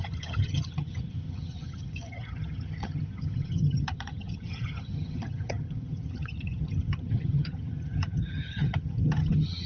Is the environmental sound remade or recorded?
remade